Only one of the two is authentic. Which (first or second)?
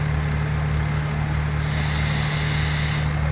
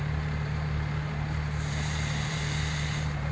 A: first